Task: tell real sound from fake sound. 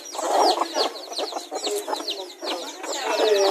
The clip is real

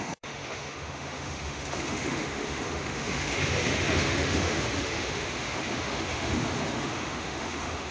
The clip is fake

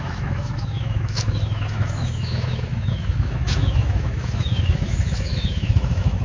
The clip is fake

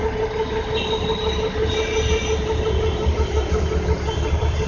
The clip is real